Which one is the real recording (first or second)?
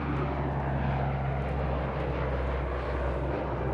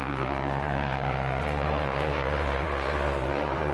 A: first